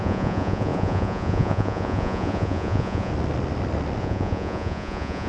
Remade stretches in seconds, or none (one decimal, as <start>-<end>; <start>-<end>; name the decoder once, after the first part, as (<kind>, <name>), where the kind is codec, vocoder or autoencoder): 0.0-3.1 (vocoder, Vocos); 4.0-5.3